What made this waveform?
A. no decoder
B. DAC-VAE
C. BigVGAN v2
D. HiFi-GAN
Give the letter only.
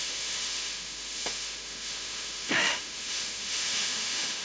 B